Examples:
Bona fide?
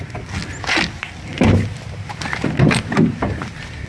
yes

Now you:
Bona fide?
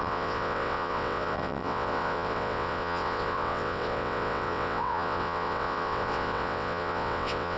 no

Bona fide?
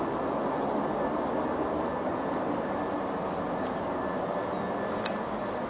yes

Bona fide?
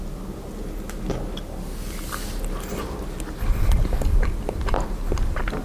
yes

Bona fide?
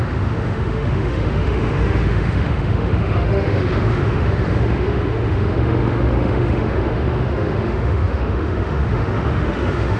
no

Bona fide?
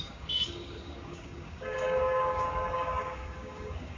no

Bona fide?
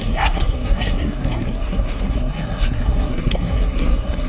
no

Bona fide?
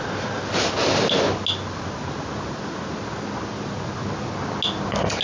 yes